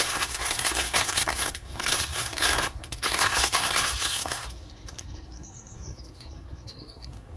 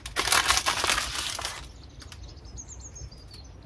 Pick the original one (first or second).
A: second